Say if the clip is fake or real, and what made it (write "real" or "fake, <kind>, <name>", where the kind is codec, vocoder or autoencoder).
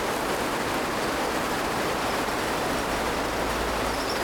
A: real